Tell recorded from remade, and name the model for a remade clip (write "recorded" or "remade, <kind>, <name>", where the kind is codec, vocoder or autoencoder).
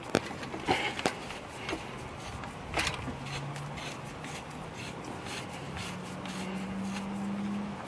recorded